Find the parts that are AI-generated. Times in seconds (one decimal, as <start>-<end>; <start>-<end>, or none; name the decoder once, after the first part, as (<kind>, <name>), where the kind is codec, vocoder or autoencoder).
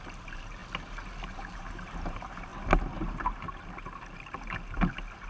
0.0-0.6 (vocoder, BigVGAN v2); 1.2-2.5